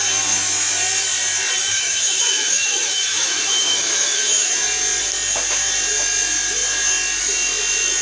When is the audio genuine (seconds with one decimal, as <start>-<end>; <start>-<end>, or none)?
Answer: 0.0-1.6; 4.5-8.0